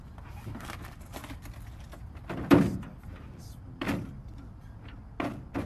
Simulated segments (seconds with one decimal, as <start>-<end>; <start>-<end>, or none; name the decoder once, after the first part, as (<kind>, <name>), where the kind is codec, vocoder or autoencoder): 1.2-4.5 (vocoder, BigVGAN v2)